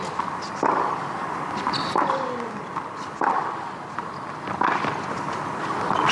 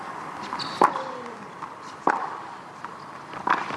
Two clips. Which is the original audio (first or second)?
first